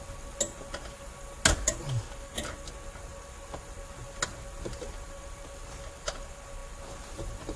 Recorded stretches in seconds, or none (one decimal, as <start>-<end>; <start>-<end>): 0.0-7.6